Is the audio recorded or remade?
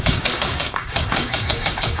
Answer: remade